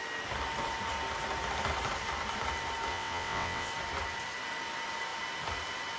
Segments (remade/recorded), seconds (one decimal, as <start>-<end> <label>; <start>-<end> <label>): 0.0-2.9 recorded; 2.9-3.7 remade; 3.7-6.0 recorded